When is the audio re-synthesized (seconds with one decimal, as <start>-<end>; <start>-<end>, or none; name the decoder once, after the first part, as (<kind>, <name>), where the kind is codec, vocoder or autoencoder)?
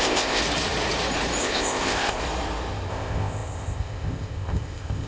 0.0-0.4 (codec, ZipCodec); 1.4-2.2; 2.9-5.1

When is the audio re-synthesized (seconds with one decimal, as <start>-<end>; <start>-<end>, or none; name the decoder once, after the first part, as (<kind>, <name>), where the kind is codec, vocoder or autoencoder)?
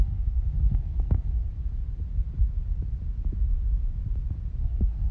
0.0-1.5 (codec, SNAC); 4.6-5.1